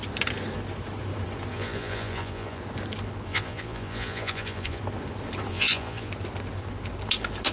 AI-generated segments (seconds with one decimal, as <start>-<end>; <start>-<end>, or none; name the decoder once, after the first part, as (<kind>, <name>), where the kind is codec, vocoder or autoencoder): 1.5-2.6 (vocoder, Vocos); 3.3-4.8; 5.5-6.1